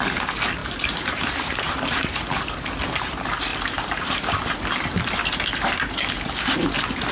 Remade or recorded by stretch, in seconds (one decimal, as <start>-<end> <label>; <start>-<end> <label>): 0.0-0.6 recorded; 0.6-2.3 remade; 2.3-3.5 recorded; 3.5-4.3 remade; 4.3-5.5 recorded; 5.5-6.5 remade; 6.5-7.1 recorded